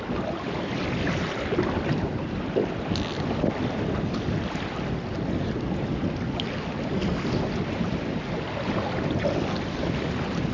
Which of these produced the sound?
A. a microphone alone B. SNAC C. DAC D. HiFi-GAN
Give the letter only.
A